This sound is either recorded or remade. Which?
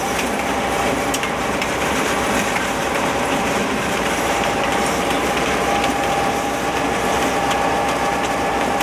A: remade